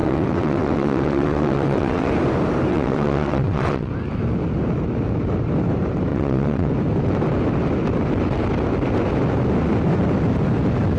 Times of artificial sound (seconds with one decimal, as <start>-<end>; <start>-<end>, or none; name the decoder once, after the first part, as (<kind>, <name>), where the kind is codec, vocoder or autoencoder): 0.0-2.1 (vocoder, WaveNeXt); 2.7-3.9; 6.1-6.7